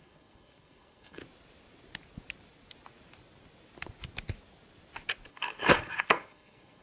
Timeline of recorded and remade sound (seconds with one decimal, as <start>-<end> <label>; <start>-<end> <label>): 0.0-1.2 remade; 1.2-5.3 recorded; 5.3-6.8 remade

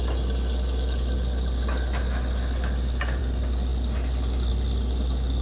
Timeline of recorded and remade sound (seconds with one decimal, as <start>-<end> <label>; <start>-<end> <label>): 0.0-5.4 recorded

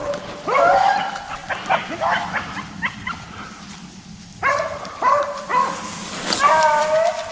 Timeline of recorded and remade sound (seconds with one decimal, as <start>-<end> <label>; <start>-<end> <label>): 0.0-7.3 recorded

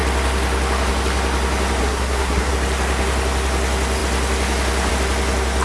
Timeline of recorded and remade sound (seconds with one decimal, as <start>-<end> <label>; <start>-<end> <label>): 0.0-1.8 recorded; 1.8-2.5 remade; 2.5-5.6 recorded

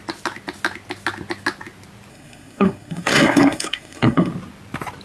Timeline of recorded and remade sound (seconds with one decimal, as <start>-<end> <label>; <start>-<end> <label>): 0.0-2.1 recorded; 2.1-4.3 remade; 4.3-5.0 recorded

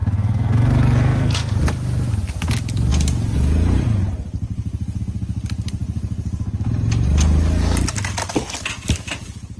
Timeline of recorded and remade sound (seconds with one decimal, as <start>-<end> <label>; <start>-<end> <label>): 0.0-1.5 remade; 1.5-9.6 recorded